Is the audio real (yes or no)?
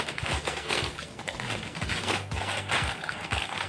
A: no